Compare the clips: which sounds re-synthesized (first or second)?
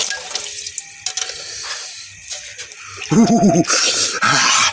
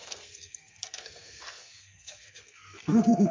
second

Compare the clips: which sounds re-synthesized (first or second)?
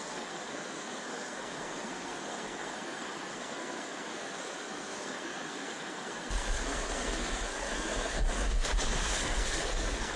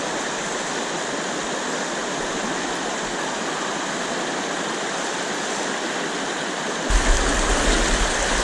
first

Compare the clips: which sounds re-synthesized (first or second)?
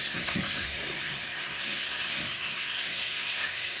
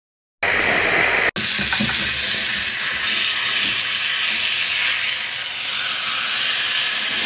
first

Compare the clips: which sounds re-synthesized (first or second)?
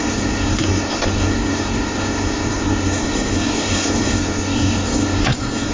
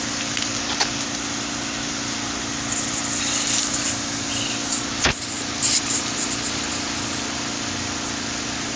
first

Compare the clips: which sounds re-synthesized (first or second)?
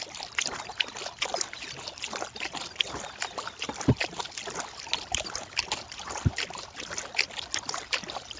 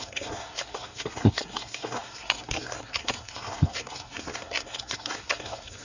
second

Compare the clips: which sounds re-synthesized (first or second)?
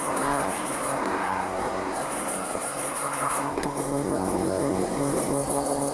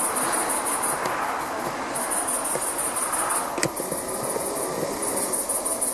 first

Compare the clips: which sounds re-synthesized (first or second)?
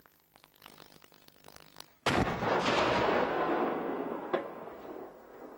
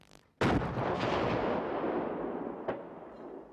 first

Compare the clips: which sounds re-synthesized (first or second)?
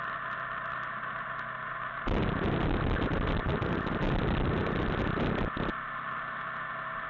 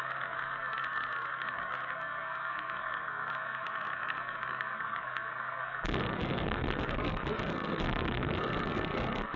second